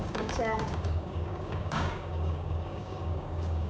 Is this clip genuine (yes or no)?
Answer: no